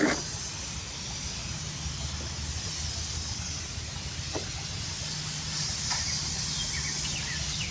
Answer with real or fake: real